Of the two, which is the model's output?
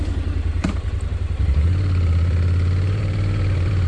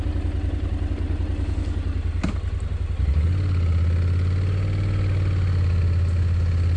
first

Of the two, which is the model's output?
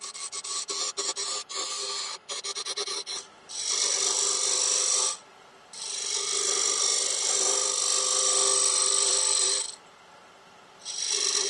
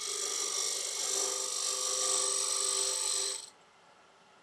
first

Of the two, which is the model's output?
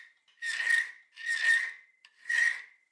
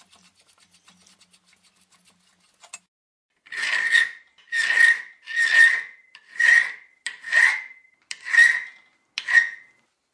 first